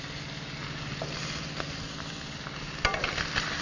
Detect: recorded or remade recorded